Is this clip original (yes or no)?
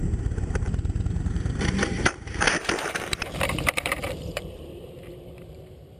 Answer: no